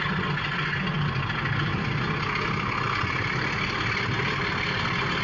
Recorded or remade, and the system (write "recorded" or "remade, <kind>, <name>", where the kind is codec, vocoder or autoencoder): recorded